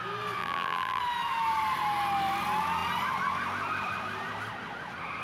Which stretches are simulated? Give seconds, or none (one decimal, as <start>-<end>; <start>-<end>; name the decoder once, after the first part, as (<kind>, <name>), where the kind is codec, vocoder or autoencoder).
0.4-1.0 (vocoder, BigVGAN v2)